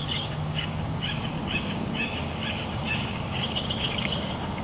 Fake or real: fake